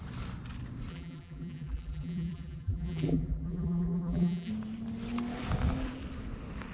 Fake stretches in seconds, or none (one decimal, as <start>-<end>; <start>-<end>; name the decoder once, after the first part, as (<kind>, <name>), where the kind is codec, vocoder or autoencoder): 0.9-4.5 (vocoder, BigVGAN v2)